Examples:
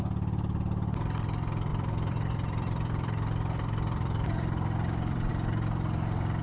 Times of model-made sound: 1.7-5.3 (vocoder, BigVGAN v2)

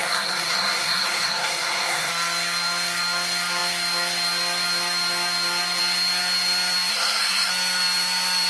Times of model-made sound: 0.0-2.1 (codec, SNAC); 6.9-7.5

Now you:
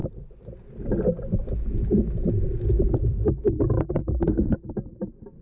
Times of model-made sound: none

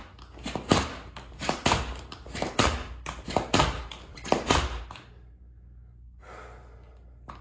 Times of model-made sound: 0.7-5.1 (vocoder, BigVGAN v2)

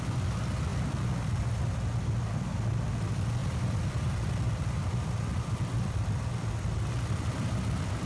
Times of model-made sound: 0.7-1.4 (vocoder, BigVGAN v2); 3.4-6.2

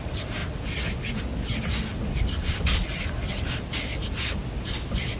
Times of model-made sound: none